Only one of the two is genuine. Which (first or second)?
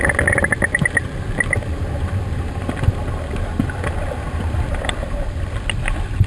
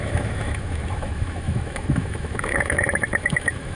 first